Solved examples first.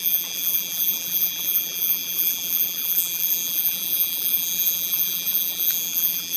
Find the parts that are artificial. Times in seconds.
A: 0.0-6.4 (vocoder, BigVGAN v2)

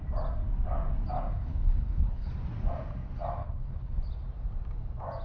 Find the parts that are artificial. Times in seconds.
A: 1.3-2.3 (codec, HILCodec); 3.4-4.0